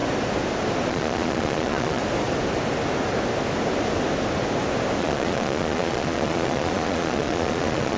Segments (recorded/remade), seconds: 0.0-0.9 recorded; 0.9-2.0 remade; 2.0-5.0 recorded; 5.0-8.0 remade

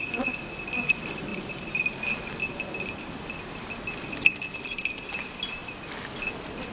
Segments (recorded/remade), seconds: 0.0-6.7 recorded

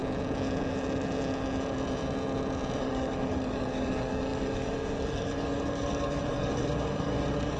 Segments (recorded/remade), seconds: 0.0-2.8 recorded; 2.8-7.6 remade

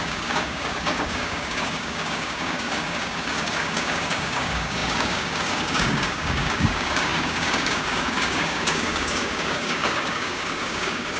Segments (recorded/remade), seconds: 0.0-11.2 remade

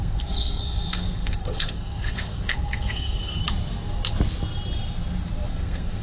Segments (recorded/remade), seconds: 0.0-3.4 remade; 3.4-5.5 recorded; 5.5-6.0 remade